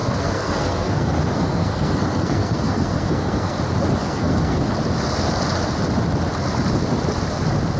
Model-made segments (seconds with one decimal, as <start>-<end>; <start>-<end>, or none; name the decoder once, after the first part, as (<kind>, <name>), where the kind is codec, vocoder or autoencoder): 0.0-3.6 (codec, SNAC); 4.0-4.6